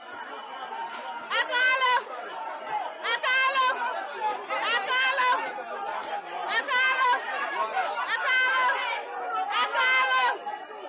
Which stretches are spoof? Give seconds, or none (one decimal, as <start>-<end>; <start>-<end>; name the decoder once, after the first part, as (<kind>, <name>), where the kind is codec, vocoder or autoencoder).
0.8-2.6 (vocoder, BigVGAN v2); 6.4-7.5